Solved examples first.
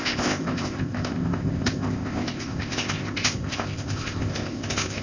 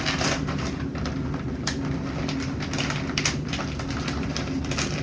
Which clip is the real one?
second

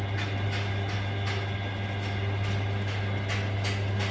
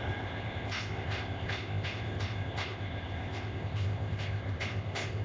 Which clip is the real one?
first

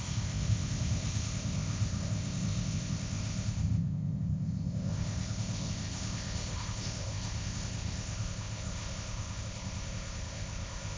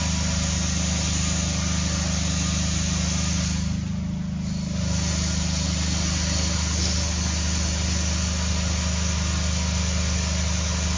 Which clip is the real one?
second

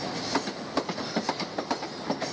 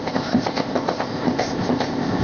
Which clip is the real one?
first